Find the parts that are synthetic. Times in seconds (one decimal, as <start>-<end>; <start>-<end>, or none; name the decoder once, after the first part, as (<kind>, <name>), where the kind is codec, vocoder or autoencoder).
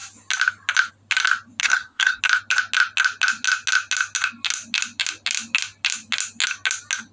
1.6-2.2 (codec, SNAC)